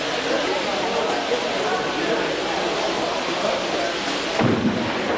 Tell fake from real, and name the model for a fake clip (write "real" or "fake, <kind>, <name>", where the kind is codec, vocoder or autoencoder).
real